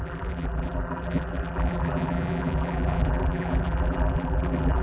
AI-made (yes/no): yes